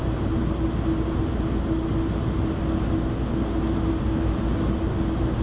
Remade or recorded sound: recorded